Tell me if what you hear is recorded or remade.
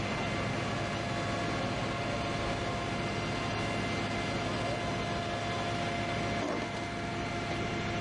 recorded